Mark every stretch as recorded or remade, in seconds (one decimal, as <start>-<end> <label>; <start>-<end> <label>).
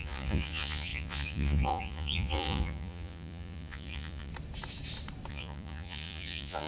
0.0-4.3 remade; 4.3-5.3 recorded; 5.3-6.7 remade